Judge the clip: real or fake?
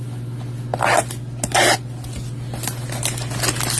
real